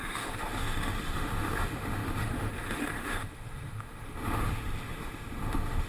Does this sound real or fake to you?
fake